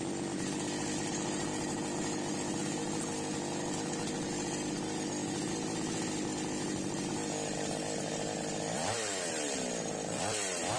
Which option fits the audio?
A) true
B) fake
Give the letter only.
A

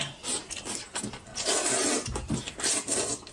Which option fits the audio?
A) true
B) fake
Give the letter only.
A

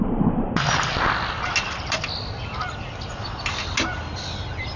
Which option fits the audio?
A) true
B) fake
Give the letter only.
A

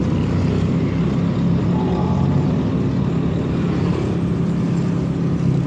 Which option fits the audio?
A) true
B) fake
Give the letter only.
A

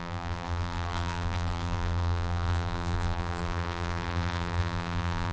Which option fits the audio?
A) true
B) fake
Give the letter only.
B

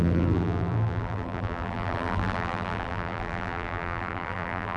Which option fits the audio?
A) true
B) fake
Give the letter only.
B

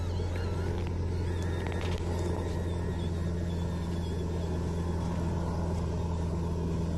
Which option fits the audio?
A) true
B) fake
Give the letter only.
A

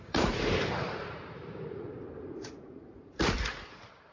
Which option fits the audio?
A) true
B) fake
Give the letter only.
B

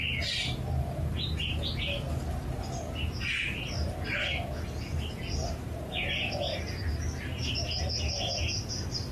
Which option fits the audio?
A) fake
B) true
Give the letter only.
B